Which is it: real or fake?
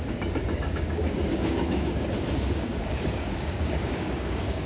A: fake